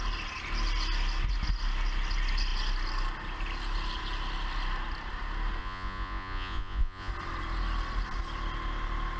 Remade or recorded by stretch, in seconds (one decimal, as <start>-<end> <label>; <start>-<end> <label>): 0.0-5.6 recorded; 5.6-7.1 remade; 7.1-9.2 recorded

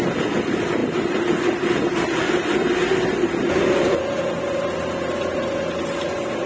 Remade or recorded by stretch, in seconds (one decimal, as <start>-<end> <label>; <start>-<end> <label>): 0.0-6.5 recorded

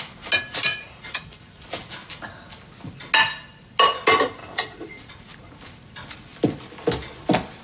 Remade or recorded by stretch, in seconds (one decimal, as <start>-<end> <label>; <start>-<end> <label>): 0.0-0.7 recorded; 0.7-1.6 remade; 1.6-4.4 recorded; 4.4-5.1 remade; 5.1-7.6 recorded

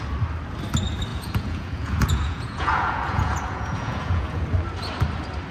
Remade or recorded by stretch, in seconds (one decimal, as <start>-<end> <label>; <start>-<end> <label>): 0.0-1.1 recorded; 1.1-4.4 remade; 4.4-5.5 recorded

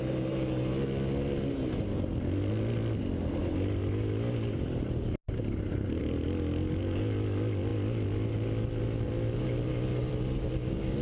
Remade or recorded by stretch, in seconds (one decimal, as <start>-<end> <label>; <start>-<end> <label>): 0.0-11.0 recorded

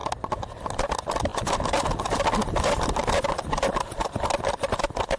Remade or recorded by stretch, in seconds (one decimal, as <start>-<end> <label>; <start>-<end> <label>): 0.0-5.2 recorded

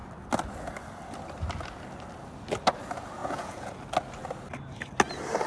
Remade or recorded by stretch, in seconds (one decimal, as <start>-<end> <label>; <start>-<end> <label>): 0.0-3.2 recorded; 3.2-3.7 remade; 3.7-5.5 recorded